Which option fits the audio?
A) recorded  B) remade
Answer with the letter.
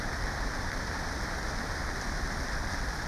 A